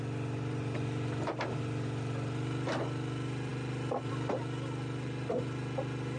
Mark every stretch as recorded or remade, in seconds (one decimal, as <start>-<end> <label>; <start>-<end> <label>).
0.0-6.2 recorded